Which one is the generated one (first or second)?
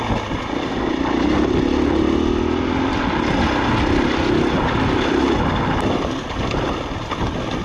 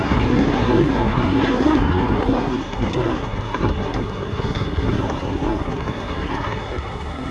second